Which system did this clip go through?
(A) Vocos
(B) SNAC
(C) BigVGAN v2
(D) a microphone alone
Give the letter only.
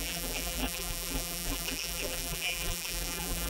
C